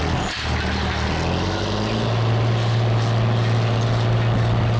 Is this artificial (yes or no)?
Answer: no